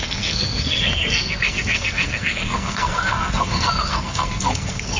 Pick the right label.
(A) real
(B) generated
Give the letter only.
B